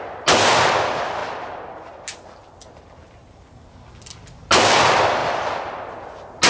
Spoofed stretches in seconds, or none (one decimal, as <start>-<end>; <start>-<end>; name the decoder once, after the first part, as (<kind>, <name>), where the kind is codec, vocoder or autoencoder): none